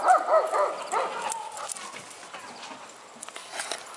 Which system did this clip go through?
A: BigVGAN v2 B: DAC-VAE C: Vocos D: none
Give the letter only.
D